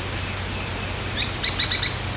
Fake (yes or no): no